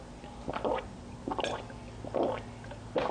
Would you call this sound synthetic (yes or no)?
no